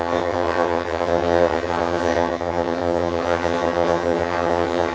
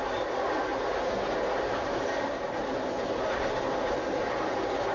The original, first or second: second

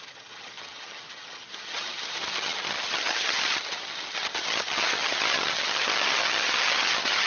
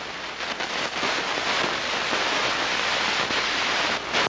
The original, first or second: second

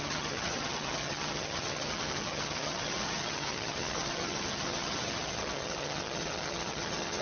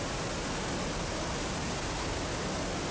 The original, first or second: second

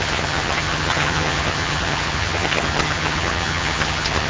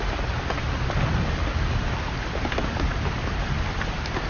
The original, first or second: second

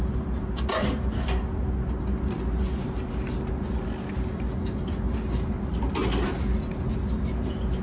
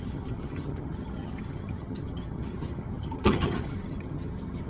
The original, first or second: first